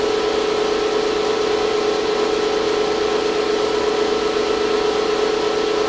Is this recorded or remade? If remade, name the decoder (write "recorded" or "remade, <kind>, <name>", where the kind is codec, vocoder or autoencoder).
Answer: recorded